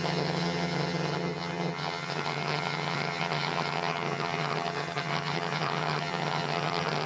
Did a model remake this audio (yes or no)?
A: yes